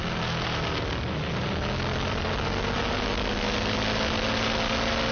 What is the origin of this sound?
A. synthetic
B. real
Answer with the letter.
B